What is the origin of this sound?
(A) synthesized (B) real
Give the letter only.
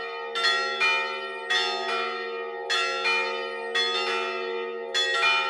B